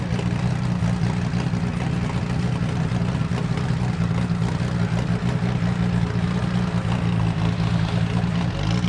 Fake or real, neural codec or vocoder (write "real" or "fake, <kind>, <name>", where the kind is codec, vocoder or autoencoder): real